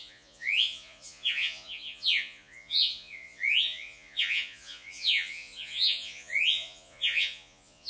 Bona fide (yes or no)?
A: no